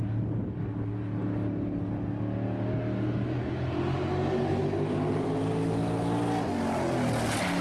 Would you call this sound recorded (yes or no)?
yes